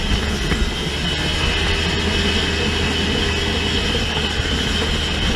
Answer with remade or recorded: recorded